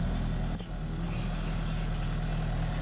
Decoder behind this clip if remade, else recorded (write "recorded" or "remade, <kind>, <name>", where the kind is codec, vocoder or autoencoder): recorded